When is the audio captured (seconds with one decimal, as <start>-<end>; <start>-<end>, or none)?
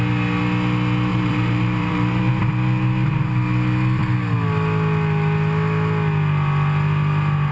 0.0-1.1; 2.3-7.5